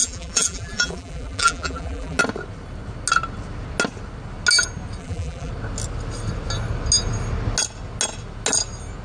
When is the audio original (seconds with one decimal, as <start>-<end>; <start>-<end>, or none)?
2.2-5.0; 5.5-9.0